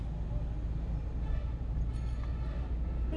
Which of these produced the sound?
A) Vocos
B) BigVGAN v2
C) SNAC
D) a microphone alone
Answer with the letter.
D